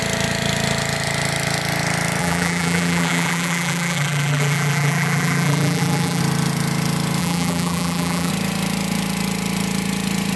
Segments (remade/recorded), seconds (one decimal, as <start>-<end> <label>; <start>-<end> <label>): 0.0-2.2 recorded; 2.2-6.2 remade; 6.2-7.2 recorded; 7.2-8.3 remade; 8.3-10.4 recorded